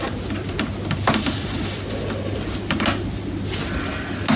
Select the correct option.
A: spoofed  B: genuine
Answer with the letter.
B